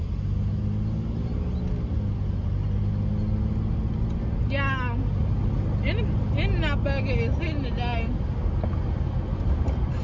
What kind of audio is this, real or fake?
real